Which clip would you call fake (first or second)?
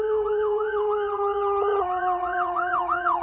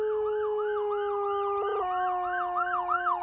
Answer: first